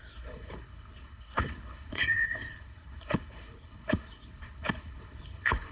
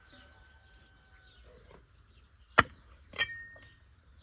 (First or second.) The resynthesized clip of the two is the first